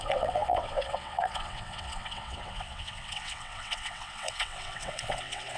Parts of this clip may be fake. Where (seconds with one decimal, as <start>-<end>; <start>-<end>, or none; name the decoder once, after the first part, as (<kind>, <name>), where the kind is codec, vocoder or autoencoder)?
0.0-5.6 (vocoder, WaveNeXt)